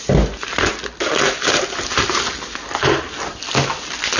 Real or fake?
real